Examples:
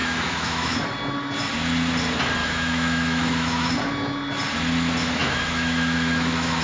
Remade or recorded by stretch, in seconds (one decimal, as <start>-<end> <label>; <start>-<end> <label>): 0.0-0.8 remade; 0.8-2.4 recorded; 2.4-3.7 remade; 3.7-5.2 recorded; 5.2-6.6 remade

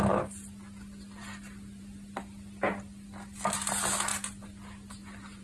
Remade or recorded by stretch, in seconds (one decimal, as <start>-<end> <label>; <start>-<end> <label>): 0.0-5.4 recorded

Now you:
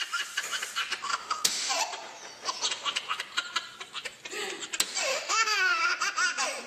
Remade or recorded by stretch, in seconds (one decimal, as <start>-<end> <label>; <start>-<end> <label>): 0.0-1.1 recorded; 1.1-1.7 remade; 1.7-5.1 recorded; 5.1-5.8 remade; 5.8-6.7 recorded